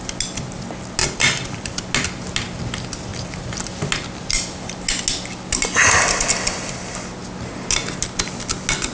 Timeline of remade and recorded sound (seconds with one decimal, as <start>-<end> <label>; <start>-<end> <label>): 0.0-1.0 recorded; 1.0-1.8 remade; 1.8-3.1 recorded; 3.1-3.9 remade; 3.9-8.9 recorded